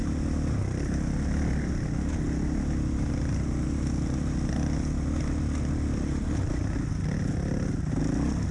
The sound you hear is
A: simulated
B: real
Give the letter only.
B